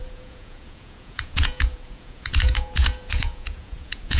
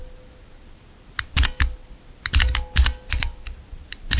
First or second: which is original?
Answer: second